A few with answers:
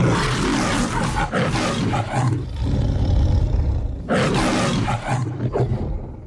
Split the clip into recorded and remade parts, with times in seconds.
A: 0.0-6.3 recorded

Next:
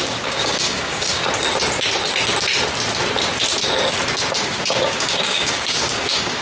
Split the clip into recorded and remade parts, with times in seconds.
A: 0.0-1.2 remade; 1.2-4.4 recorded; 4.4-6.4 remade

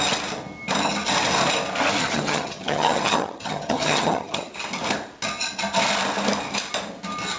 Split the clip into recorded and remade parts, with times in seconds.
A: 0.0-2.0 recorded; 2.0-4.5 remade; 4.5-7.4 recorded

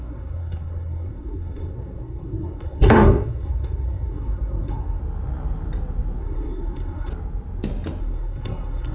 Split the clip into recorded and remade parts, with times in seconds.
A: 0.0-5.0 remade; 5.0-6.2 recorded; 6.2-7.1 remade; 7.1-8.0 recorded; 8.0-8.9 remade

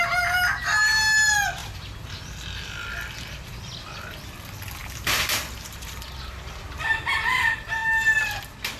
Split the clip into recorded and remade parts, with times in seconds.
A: 0.0-1.6 recorded; 1.6-2.2 remade; 2.2-4.8 recorded; 4.8-6.5 remade; 6.5-8.8 recorded

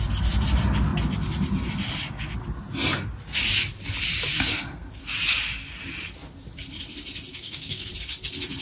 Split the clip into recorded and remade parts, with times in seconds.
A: 0.0-4.5 recorded; 4.5-5.0 remade; 5.0-7.3 recorded; 7.3-7.9 remade; 7.9-8.6 recorded

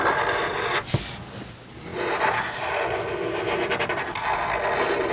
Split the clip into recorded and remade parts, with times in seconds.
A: 0.0-5.1 recorded

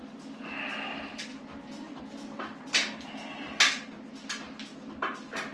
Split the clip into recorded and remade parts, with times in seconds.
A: 0.0-5.5 recorded